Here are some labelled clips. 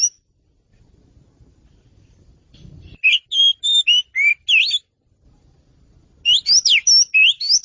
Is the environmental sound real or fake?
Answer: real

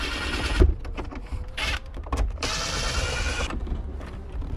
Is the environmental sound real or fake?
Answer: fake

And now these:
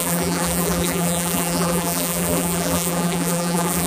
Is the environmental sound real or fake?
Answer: fake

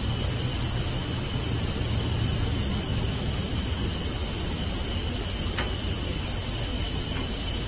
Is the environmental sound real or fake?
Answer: real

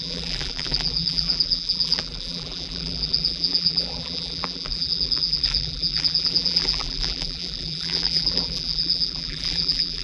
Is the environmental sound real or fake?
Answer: fake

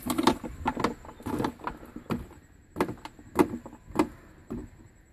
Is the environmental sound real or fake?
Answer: real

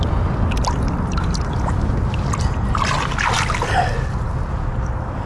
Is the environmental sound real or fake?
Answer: real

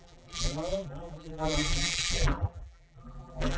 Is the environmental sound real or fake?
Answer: fake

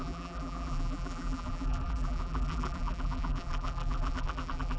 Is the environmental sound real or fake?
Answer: fake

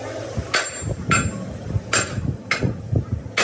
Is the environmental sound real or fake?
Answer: real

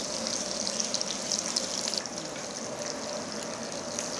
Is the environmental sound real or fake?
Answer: real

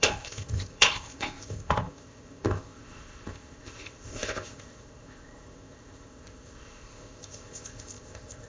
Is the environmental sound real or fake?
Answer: fake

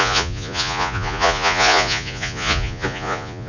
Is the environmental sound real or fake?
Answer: fake